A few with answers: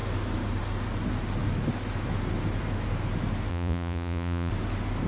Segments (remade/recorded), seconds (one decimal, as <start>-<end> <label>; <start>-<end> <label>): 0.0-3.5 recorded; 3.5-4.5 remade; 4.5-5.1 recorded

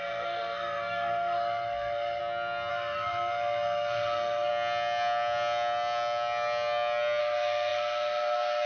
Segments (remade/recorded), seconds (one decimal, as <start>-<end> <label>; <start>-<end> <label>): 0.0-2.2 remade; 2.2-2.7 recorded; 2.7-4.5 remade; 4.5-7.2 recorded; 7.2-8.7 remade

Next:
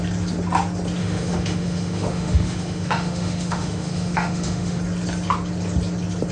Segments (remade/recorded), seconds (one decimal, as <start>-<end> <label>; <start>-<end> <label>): 0.0-1.0 recorded; 1.0-4.8 remade; 4.8-6.3 recorded

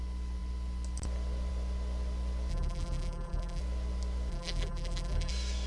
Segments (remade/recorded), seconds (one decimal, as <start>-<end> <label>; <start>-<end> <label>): 0.0-2.5 recorded; 2.5-3.6 remade; 3.6-4.3 recorded; 4.3-5.3 remade; 5.3-5.7 recorded